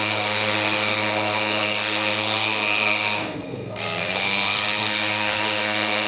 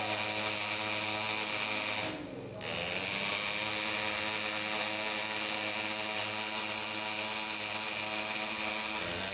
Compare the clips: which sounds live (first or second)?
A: second